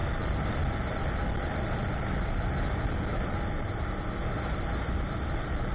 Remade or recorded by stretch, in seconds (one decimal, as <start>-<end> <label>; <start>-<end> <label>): 0.0-5.7 recorded